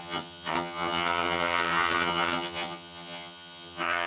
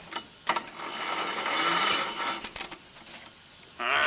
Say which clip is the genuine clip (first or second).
second